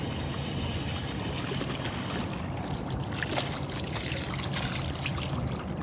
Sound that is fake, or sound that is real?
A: real